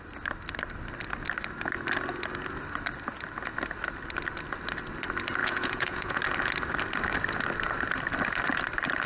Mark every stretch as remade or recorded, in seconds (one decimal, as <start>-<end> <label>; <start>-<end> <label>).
0.0-5.4 recorded; 5.4-6.2 remade; 6.2-9.1 recorded